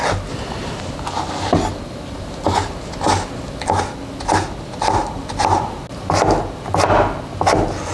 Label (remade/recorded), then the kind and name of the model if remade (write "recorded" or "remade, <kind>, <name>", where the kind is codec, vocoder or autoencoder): recorded